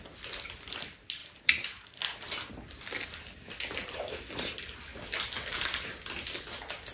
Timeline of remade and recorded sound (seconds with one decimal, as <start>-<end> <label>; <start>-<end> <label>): 0.0-6.9 recorded